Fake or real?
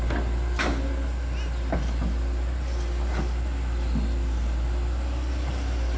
real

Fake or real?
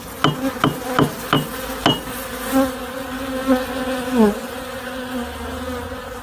real